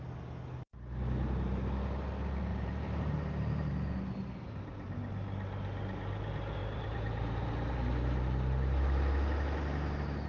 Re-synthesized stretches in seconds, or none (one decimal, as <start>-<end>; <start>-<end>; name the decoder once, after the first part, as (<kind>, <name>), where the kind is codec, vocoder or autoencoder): 2.5-3.7 (vocoder, BigVGAN v2); 6.6-7.7